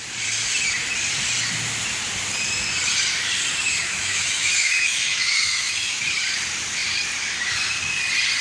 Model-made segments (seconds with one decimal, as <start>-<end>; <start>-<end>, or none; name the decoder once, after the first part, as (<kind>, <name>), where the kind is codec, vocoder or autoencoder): 3.8-6.0 (autoencoder, DAC-VAE)